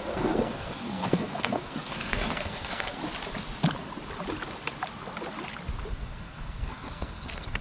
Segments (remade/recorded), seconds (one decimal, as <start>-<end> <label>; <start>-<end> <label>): 0.0-3.0 remade; 3.0-5.9 recorded; 5.9-7.6 remade